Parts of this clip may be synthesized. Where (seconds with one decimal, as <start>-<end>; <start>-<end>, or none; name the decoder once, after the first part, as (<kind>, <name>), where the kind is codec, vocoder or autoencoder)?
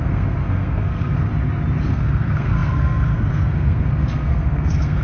0.0-1.3 (codec, SNAC); 1.9-5.0